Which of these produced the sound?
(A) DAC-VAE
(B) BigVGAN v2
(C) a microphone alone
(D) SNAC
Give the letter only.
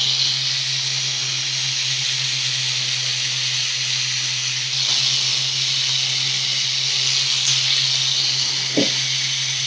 C